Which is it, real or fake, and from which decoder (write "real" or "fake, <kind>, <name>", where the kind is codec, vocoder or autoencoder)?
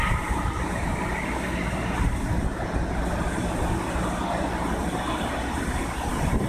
real